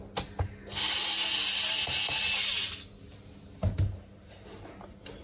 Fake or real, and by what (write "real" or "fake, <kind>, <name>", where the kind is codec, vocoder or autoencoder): real